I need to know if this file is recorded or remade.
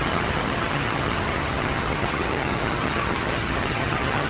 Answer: remade